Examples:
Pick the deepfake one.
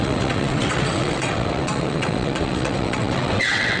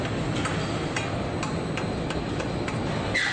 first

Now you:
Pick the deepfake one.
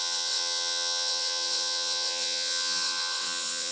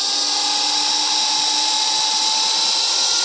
first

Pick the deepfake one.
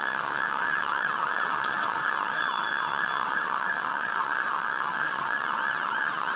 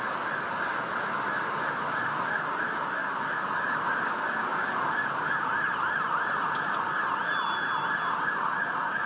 first